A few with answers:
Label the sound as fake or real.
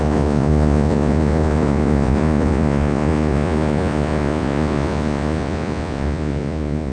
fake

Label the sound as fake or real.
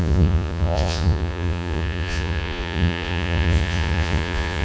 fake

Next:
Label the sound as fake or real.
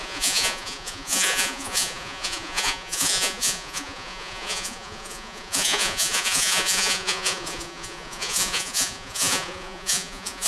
fake